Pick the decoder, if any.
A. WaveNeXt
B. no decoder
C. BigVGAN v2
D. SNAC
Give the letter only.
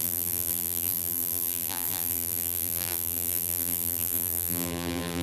C